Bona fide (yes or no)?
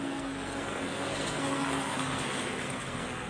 no